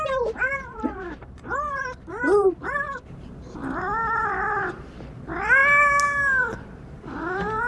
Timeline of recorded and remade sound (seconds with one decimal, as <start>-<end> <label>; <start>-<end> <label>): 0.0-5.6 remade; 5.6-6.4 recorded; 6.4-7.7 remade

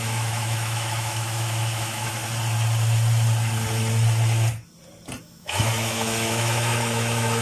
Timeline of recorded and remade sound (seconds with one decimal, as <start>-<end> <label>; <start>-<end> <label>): 0.0-2.2 remade; 2.2-5.2 recorded; 5.2-7.4 remade

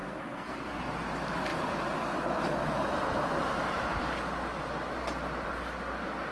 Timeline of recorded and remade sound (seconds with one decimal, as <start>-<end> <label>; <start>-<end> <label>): 0.0-0.8 remade; 0.8-6.3 recorded